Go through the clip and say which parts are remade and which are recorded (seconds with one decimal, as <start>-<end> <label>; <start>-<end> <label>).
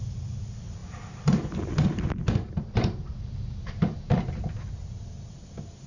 0.0-0.8 recorded; 0.8-4.3 remade; 4.3-5.9 recorded